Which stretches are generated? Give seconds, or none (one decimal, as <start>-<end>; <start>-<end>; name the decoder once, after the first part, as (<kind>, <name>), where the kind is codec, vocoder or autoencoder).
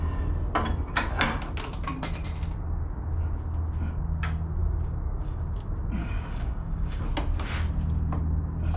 4.6-5.4 (codec, DAC); 6.0-7.0